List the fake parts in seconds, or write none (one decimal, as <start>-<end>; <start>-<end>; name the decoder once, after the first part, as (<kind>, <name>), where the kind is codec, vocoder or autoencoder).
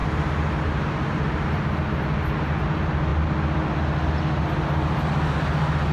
none